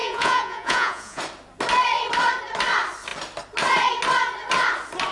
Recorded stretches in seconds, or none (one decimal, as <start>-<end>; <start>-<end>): 1.2-5.1